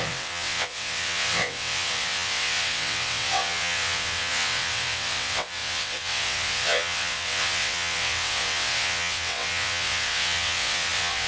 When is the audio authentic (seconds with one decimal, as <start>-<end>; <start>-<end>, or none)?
none